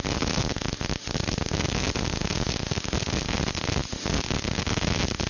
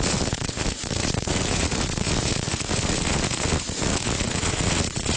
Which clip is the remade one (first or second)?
second